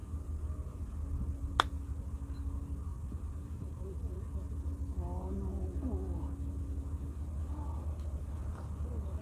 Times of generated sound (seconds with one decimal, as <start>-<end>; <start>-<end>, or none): none